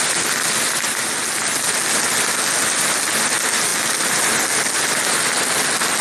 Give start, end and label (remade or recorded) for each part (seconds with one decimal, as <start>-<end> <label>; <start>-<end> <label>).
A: 0.0-6.0 recorded